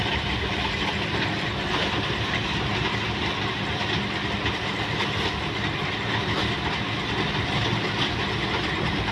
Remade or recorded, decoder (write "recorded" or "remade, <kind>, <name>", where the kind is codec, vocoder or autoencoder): recorded